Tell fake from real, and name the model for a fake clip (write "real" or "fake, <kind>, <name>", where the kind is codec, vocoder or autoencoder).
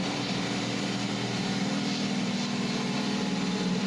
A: real